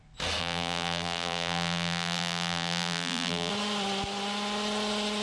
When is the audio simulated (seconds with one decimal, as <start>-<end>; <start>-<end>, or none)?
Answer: 0.4-3.5